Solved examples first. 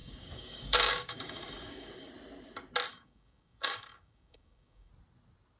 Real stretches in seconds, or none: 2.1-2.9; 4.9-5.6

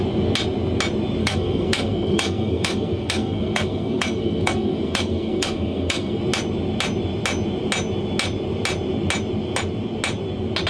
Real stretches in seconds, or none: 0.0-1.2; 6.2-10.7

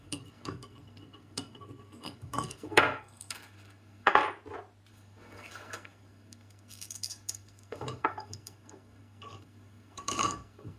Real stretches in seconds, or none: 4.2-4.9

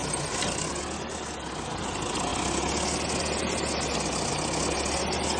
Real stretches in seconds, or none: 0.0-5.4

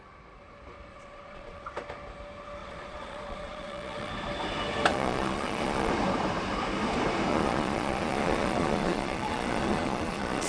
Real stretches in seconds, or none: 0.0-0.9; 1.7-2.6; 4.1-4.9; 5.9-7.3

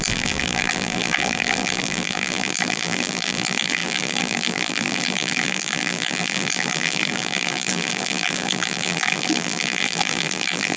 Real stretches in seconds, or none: none

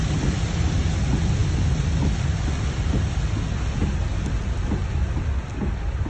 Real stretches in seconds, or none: 0.0-6.1